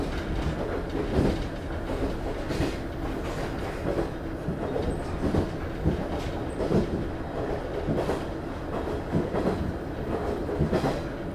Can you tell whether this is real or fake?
real